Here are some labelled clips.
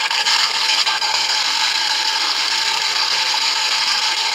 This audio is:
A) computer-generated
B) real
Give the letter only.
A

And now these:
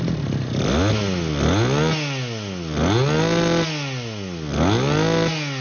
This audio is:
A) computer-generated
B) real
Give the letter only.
B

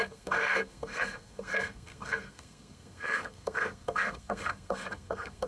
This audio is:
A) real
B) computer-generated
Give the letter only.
B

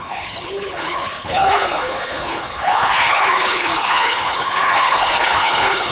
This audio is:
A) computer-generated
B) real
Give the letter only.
A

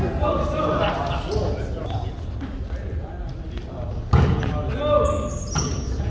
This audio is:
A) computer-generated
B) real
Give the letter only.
B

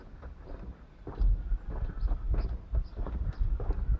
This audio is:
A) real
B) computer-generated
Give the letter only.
A